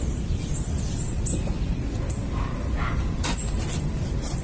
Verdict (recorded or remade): recorded